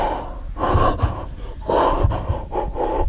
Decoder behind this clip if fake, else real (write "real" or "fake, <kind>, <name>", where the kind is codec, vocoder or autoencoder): real